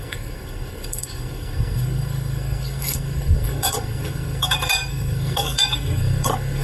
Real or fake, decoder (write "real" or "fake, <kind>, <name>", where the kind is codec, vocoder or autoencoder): fake, codec, SNAC